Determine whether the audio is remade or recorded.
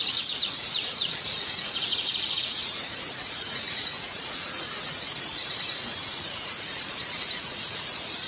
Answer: remade